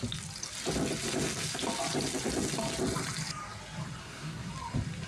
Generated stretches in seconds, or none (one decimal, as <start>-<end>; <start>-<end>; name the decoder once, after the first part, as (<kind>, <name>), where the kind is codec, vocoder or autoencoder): 4.0-4.5 (codec, SNAC)